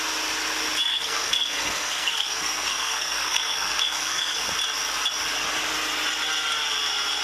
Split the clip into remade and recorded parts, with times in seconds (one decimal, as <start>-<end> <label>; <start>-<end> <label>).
0.0-0.9 recorded; 0.9-4.5 remade; 4.5-7.2 recorded